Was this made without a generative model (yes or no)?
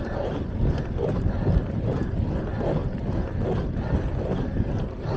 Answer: yes